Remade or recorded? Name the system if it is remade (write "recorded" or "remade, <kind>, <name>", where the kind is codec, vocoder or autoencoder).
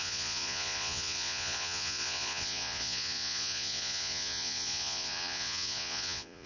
remade, vocoder, Vocos